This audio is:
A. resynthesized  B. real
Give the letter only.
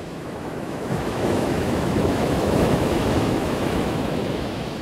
A